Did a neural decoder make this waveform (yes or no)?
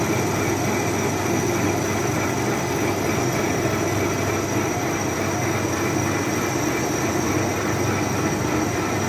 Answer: no